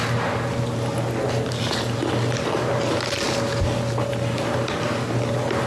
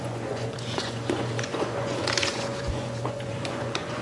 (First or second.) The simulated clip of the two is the second